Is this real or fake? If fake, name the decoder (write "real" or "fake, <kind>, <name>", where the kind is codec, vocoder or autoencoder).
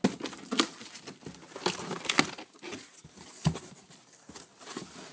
real